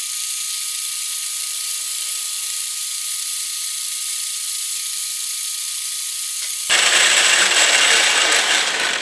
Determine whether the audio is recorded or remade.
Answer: remade